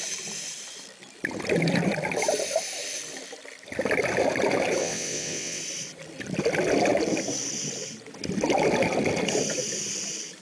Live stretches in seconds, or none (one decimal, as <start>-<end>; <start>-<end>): 0.0-4.8; 5.6-10.4